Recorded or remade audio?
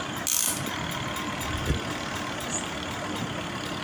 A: recorded